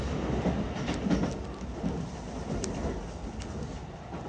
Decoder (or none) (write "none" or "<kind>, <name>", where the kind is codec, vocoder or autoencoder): none